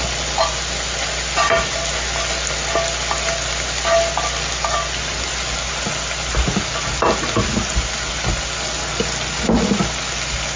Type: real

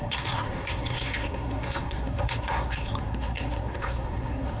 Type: fake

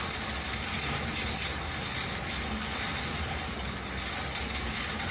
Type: real